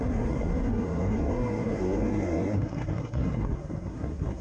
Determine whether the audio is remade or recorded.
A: remade